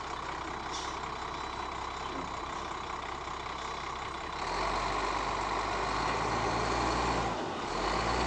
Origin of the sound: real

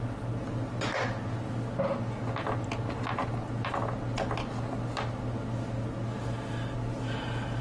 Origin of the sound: real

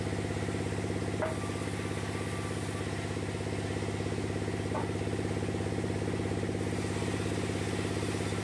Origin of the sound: real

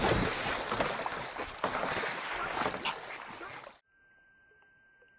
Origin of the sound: real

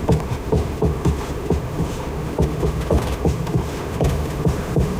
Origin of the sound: fake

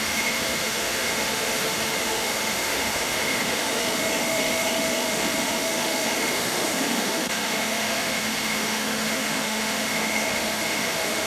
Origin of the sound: fake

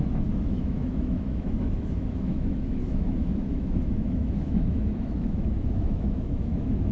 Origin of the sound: fake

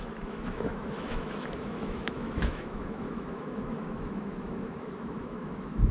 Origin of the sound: fake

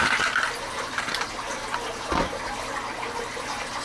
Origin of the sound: real